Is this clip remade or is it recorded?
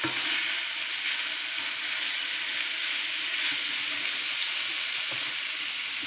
recorded